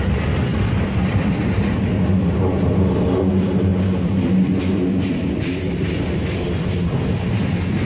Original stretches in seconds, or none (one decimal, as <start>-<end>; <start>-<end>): 0.0-0.5; 3.3-3.7; 7.1-7.9